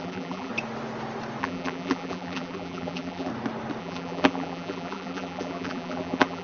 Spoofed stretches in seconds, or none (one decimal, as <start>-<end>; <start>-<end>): 0.0-0.5; 1.4-3.3; 3.8-6.4